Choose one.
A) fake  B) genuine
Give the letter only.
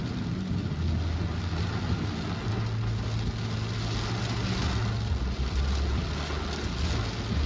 B